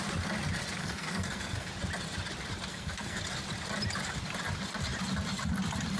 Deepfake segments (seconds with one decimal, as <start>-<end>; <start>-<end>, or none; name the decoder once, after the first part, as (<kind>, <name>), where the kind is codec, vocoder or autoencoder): 0.8-1.7 (codec, SNAC); 2.7-3.2